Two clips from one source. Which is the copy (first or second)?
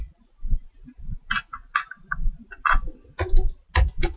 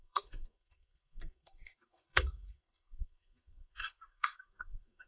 second